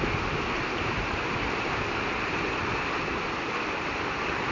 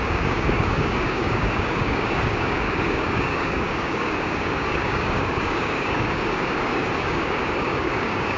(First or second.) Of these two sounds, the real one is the first